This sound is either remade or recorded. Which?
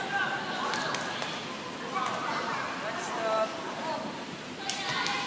recorded